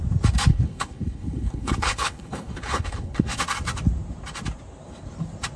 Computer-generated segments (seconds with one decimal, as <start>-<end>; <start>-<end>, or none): 0.5-3.4